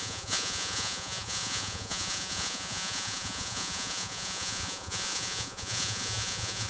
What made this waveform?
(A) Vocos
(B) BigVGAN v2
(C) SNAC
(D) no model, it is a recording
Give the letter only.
A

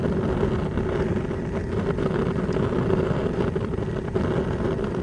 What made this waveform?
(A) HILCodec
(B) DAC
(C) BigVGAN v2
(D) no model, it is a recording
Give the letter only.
D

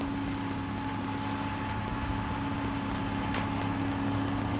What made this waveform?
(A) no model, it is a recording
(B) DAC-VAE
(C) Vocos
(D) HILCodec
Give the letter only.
A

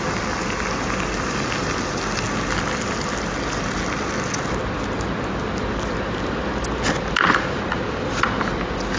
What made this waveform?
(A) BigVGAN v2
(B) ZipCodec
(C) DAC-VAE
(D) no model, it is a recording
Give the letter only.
D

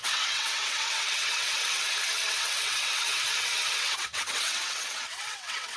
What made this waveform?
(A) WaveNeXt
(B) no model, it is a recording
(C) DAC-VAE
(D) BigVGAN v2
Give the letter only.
A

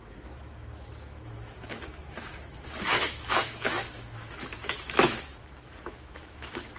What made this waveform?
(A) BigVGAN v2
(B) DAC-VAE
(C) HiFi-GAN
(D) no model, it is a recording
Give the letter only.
B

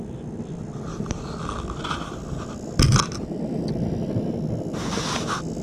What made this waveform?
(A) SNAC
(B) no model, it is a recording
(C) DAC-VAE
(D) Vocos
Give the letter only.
B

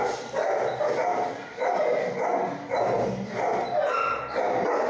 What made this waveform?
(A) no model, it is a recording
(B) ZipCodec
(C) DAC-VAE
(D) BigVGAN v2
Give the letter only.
A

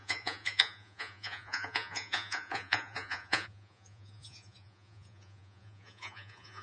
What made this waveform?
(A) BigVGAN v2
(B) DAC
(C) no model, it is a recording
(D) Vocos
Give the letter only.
D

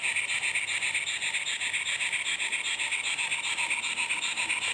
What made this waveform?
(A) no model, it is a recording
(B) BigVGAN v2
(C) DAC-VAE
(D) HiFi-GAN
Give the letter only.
A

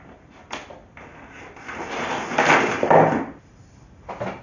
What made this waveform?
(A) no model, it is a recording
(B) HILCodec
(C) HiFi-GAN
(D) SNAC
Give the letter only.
A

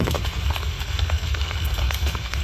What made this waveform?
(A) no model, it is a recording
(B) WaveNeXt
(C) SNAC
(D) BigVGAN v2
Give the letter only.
C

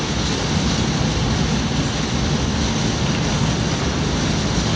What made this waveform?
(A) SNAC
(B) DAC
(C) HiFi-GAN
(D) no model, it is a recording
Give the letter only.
D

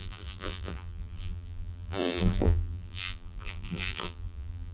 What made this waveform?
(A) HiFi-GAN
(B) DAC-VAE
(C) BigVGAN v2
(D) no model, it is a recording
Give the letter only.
C